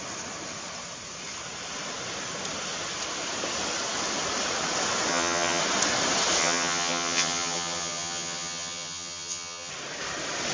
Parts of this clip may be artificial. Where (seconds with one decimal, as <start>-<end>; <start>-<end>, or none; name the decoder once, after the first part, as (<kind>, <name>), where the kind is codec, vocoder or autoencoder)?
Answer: 5.1-5.6 (vocoder, HiFi-GAN); 6.4-9.7